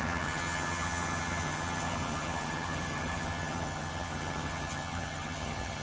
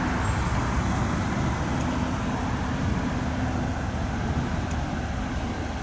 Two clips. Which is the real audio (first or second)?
second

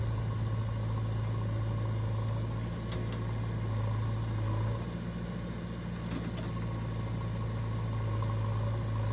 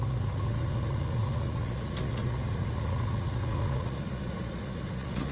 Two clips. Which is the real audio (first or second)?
first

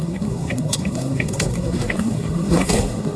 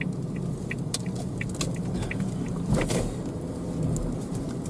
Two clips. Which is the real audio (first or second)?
second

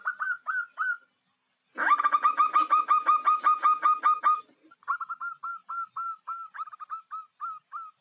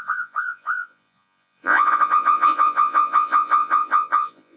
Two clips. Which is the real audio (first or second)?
first